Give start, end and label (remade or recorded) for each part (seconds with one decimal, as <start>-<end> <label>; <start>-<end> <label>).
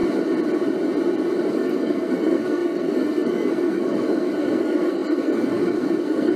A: 0.0-1.5 recorded; 1.5-6.4 remade